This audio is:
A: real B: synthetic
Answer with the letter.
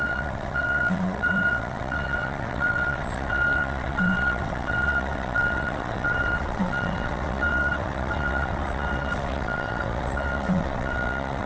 B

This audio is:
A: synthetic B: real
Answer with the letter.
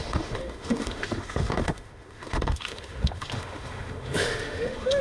A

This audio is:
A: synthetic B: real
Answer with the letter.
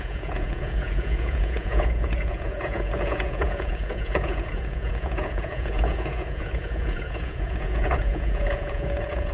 A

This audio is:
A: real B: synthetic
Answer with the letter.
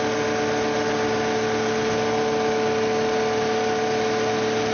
A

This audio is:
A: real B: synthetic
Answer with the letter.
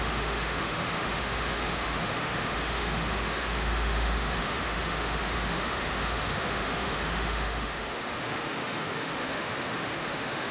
B